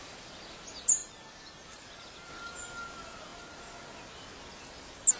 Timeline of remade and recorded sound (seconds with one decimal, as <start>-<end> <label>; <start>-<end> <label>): 0.0-5.2 recorded